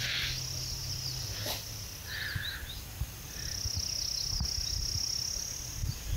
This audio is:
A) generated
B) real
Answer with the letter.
B